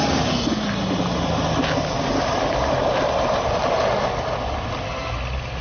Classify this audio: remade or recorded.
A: recorded